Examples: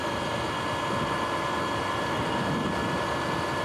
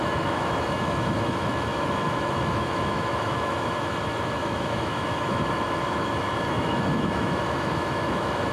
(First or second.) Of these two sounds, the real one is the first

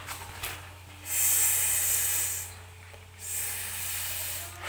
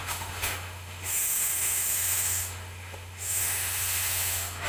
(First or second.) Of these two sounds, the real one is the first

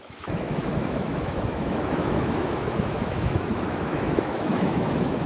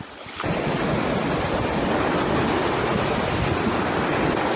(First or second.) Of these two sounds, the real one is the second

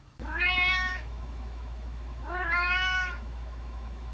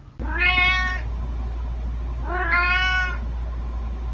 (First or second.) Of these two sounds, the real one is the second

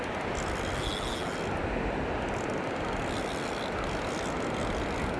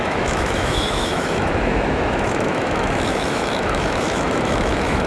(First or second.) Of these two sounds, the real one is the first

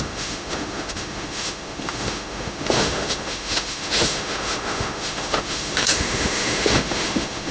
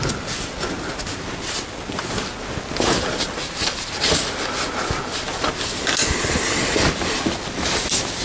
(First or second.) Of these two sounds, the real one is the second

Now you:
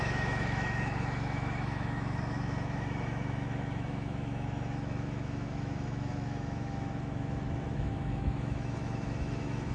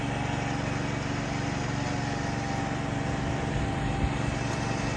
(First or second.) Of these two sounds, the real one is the second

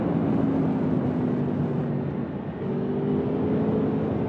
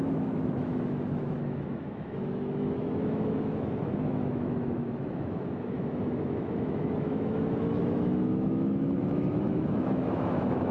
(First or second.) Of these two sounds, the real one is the first